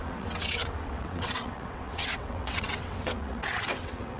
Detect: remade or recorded remade